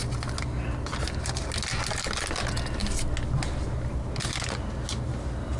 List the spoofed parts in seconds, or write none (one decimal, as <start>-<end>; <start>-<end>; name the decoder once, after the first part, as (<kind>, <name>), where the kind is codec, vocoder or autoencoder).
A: none